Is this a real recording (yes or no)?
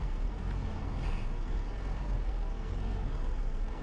no